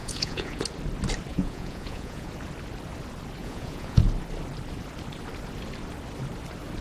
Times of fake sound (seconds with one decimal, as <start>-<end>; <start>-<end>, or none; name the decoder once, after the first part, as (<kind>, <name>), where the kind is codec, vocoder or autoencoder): 0.0-0.6 (vocoder, Vocos); 1.3-2.3; 3.4-4.0